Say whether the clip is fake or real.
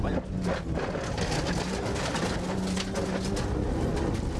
real